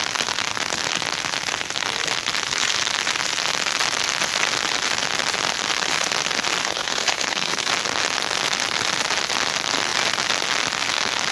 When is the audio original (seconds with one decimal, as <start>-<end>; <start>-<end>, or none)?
0.0-6.6; 7.7-11.3